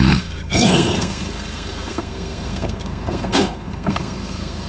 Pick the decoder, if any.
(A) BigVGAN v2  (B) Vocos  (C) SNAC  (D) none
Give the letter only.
C